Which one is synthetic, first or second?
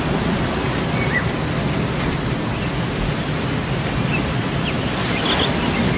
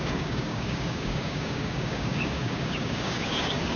second